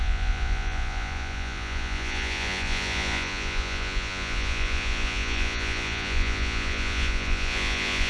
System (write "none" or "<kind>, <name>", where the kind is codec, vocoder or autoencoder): vocoder, Vocos